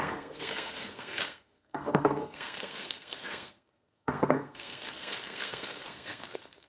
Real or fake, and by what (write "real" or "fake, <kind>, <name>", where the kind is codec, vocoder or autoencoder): fake, codec, SNAC